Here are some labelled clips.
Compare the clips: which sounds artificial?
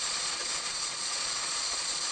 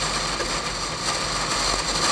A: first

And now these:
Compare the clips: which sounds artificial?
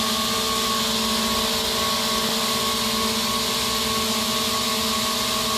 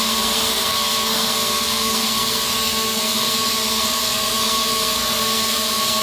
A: second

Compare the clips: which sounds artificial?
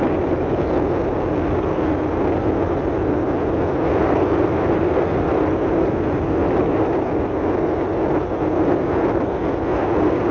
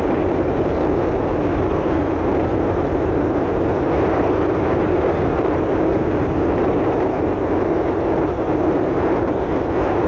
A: second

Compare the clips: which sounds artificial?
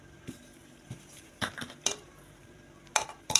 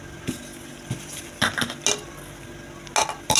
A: first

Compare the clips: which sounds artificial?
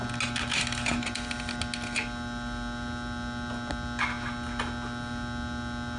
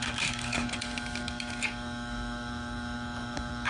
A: second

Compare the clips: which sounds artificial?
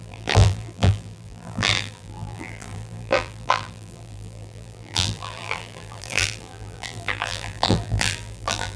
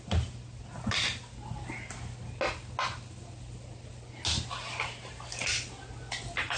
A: first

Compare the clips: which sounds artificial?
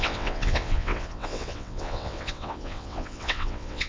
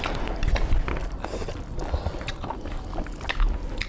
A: first